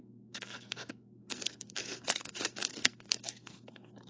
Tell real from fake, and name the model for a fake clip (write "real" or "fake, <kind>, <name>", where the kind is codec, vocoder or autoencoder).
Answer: fake, codec, SNAC